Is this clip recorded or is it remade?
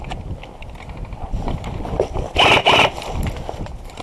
recorded